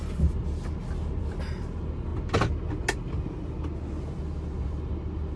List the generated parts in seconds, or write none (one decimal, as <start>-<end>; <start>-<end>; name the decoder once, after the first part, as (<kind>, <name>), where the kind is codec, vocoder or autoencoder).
none

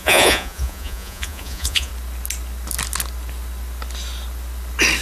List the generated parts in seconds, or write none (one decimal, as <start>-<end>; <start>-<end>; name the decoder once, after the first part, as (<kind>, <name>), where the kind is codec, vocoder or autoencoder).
0.0-1.9 (vocoder, Vocos)

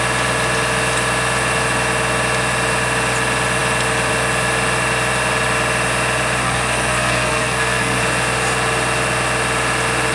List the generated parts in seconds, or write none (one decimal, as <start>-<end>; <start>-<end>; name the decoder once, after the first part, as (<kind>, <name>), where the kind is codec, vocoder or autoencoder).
6.4-8.0 (codec, SNAC)

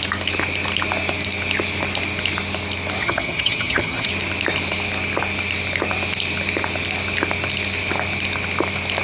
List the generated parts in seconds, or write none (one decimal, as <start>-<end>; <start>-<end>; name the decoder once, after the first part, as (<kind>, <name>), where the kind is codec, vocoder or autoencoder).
3.0-4.1 (vocoder, HiFi-GAN)

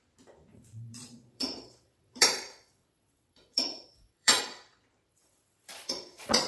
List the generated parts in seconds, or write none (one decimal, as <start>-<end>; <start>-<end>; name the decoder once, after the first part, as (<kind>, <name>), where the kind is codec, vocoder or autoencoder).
0.5-4.4 (vocoder, Vocos); 5.1-6.5

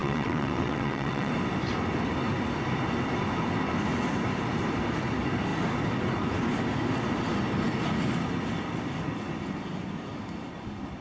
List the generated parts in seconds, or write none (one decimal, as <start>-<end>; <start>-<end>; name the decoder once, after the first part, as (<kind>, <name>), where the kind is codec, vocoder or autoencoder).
0.0-1.3 (vocoder, WaveNeXt)

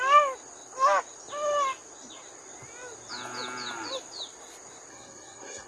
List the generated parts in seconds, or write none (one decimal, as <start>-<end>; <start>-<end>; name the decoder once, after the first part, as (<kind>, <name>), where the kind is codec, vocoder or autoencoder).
4.9-5.7 (codec, SNAC)

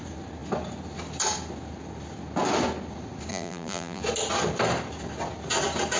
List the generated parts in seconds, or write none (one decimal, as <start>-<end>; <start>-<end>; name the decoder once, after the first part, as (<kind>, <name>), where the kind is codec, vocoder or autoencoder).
3.3-4.0 (vocoder, BigVGAN v2)